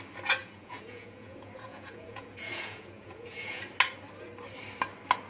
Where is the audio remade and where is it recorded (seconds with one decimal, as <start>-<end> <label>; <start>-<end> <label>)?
0.0-0.4 recorded; 0.4-3.6 remade; 3.6-5.3 recorded